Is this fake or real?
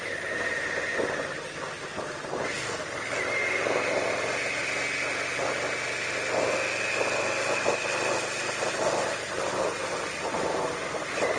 real